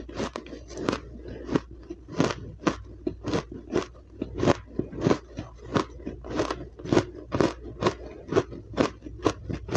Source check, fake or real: real